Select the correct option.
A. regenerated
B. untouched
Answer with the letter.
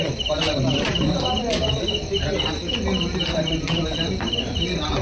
B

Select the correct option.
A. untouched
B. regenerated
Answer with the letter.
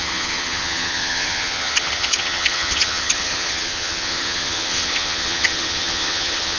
B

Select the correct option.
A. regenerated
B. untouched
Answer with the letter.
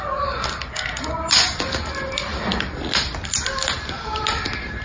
B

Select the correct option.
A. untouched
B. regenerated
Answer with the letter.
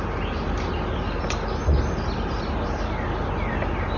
A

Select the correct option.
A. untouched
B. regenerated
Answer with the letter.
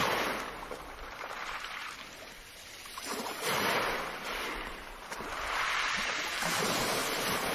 B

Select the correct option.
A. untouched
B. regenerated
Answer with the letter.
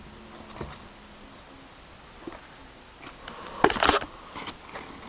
A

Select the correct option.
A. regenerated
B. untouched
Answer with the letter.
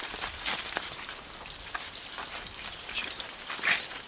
B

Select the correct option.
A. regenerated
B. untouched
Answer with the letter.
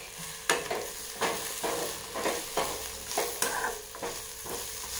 B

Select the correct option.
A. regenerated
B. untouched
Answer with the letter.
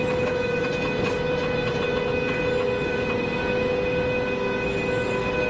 B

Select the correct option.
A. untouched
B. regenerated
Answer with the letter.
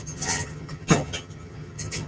B